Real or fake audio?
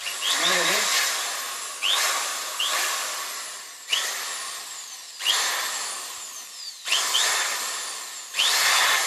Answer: real